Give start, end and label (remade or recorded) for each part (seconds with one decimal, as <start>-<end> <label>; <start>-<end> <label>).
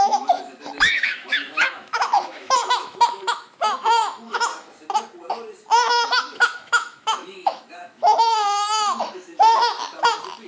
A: 0.0-4.5 remade; 4.5-5.9 recorded; 5.9-9.3 remade; 9.3-10.5 recorded